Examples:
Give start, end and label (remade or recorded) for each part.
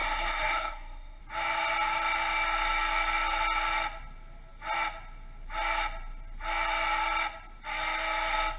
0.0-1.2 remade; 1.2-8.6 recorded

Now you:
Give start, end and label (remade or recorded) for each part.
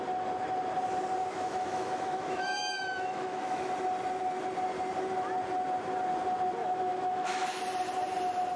0.0-1.2 recorded; 1.2-3.7 remade; 3.7-6.6 recorded; 6.6-7.6 remade; 7.6-8.6 recorded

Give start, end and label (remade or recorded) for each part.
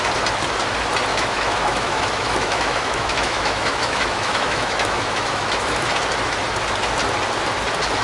0.0-1.1 recorded; 1.1-5.9 remade; 5.9-8.0 recorded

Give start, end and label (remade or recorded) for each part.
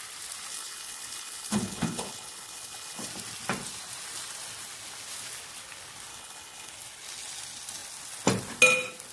0.0-0.5 recorded; 0.5-3.1 remade; 3.1-6.1 recorded; 6.1-6.7 remade; 6.7-9.1 recorded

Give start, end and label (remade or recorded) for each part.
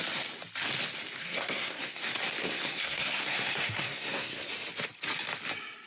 0.0-1.2 recorded; 1.2-2.0 remade; 2.0-2.4 recorded; 2.4-4.5 remade; 4.5-5.9 recorded